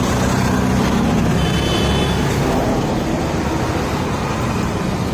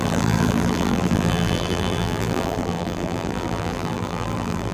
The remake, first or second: second